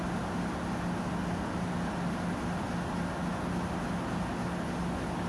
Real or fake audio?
real